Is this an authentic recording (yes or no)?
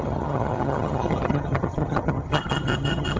no